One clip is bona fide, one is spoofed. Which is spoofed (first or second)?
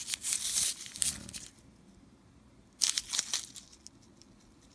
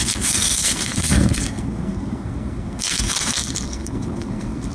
second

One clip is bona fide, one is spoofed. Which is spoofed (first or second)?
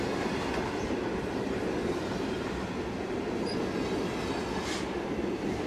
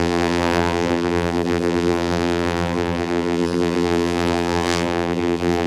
second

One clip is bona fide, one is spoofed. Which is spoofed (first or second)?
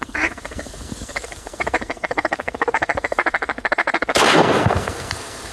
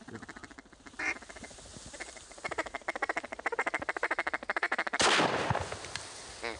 first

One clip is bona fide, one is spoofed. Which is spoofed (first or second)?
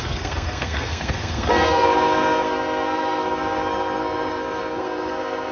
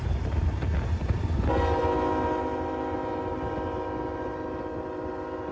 first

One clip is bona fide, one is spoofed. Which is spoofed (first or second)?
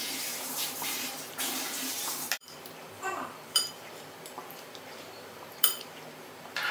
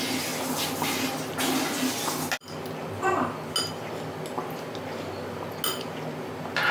first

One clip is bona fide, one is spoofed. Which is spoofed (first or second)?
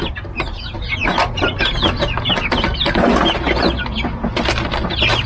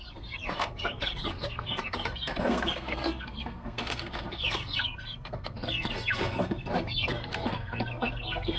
second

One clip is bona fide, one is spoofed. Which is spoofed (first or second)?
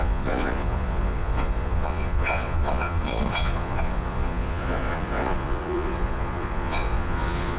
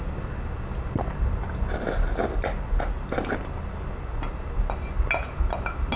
first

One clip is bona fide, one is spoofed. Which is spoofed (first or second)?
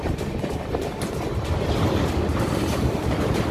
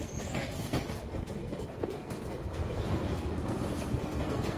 second